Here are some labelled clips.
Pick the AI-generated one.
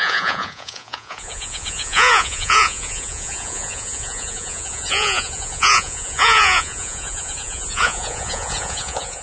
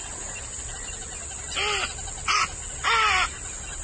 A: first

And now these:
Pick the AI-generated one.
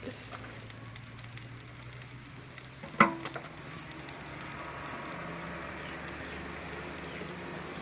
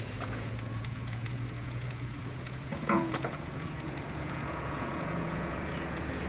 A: second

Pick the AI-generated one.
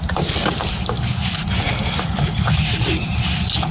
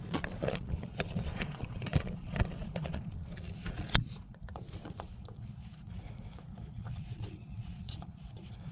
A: second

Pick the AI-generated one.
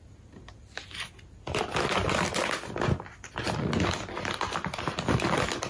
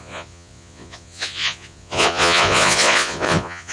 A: second